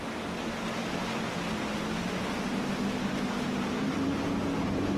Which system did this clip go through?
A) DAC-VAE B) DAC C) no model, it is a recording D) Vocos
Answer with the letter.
C